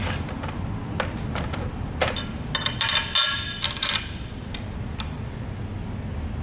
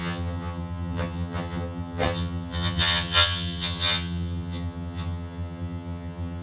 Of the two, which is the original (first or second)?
first